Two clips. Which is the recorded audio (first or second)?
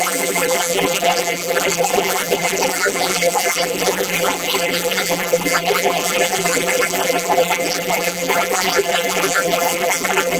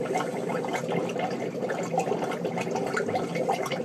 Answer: second